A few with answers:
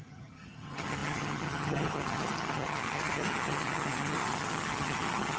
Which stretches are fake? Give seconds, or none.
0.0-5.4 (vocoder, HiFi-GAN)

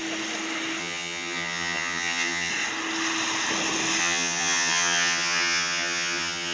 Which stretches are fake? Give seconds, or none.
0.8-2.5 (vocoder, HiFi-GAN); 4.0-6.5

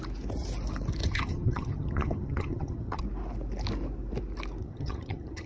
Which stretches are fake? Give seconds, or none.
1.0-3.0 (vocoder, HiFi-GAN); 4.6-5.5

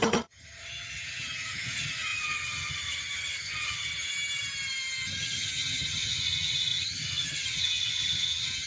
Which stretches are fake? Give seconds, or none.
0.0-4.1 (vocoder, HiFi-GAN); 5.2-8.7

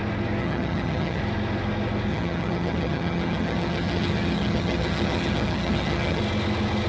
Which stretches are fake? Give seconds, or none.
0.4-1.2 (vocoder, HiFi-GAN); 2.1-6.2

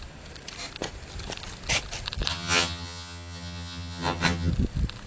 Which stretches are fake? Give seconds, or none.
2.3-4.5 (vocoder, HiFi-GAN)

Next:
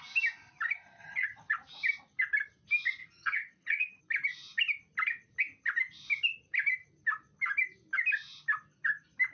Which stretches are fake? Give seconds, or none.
1.0-1.5 (vocoder, HiFi-GAN); 3.0-4.0

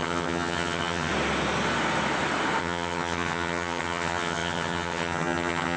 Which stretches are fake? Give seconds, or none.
0.0-1.1 (vocoder, HiFi-GAN); 2.6-5.8